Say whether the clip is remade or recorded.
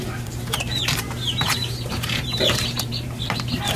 remade